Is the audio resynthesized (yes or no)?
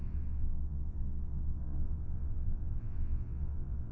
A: yes